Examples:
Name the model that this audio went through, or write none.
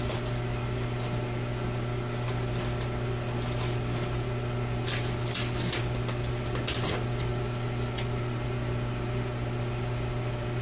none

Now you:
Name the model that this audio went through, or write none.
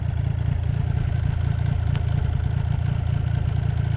none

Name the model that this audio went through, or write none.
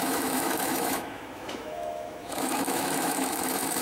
autoencoder, DAC-VAE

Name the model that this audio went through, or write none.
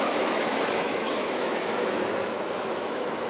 autoencoder, DAC-VAE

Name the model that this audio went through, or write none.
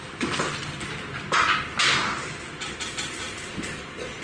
none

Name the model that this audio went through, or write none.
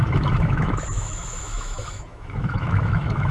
autoencoder, DAC-VAE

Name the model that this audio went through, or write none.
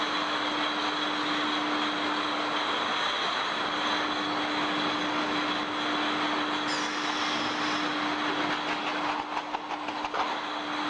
none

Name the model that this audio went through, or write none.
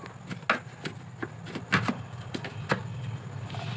none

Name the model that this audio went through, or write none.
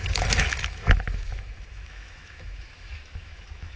autoencoder, DAC-VAE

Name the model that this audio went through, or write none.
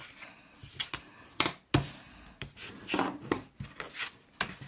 none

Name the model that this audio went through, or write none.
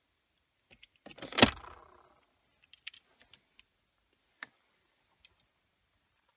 none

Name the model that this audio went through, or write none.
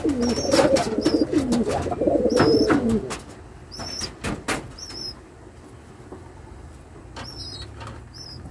none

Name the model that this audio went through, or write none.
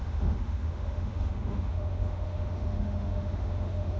autoencoder, DAC-VAE